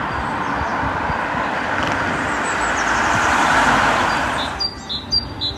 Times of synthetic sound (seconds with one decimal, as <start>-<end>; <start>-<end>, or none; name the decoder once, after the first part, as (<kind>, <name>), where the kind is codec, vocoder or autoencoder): 0.0-0.7 (vocoder, BigVGAN v2); 3.1-5.6